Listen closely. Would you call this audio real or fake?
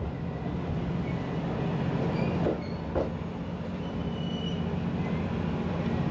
real